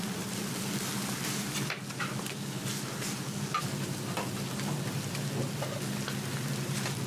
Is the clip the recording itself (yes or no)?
yes